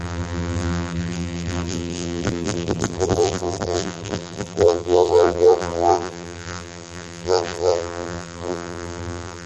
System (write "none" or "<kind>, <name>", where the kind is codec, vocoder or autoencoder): vocoder, BigVGAN v2